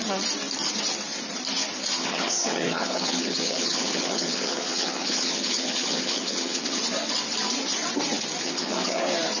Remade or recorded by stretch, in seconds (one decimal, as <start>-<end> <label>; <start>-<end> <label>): 0.0-2.0 recorded; 2.0-6.8 remade; 6.8-8.4 recorded; 8.4-9.0 remade; 9.0-9.4 recorded